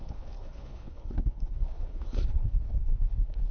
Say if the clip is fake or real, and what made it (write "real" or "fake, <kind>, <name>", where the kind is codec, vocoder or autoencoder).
fake, codec, HILCodec